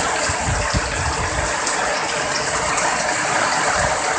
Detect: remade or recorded recorded